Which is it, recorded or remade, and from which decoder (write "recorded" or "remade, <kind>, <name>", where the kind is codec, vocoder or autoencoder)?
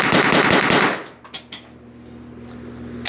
recorded